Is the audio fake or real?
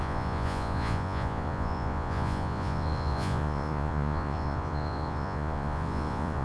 fake